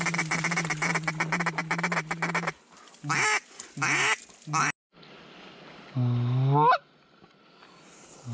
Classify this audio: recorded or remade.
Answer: recorded